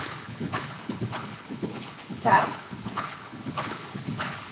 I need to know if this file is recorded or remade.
remade